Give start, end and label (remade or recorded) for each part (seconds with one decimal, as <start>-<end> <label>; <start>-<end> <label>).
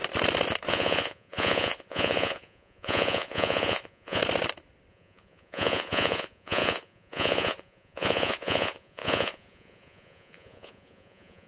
0.0-0.7 recorded; 0.7-4.2 remade; 4.2-4.9 recorded; 4.9-11.5 remade